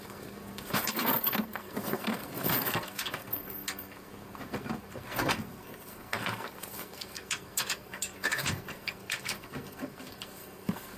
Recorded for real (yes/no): no